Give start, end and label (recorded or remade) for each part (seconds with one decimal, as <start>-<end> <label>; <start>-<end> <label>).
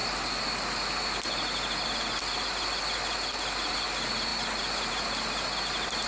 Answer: 0.0-6.1 recorded